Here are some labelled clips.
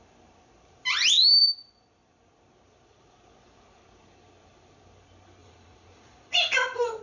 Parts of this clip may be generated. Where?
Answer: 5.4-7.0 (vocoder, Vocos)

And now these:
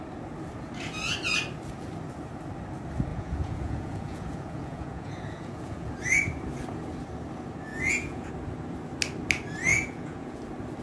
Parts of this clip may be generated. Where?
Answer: 3.1-5.9 (vocoder, Vocos); 7.7-8.3; 9.7-10.4

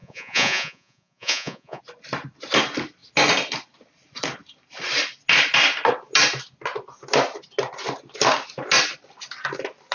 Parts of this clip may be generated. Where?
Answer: 0.0-1.8 (vocoder, Vocos)

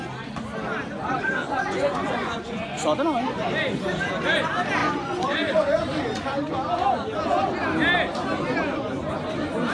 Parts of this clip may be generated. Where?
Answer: 1.5-2.8 (vocoder, Vocos); 4.8-5.8